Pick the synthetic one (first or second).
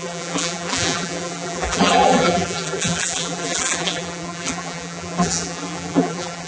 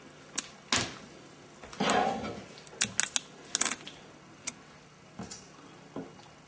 first